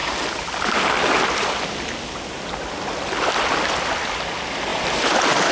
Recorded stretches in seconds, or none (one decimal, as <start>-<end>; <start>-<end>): 0.0-4.7